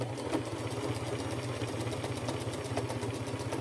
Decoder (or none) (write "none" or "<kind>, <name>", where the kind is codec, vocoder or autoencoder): none